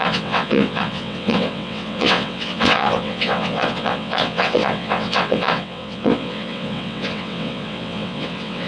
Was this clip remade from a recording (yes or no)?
yes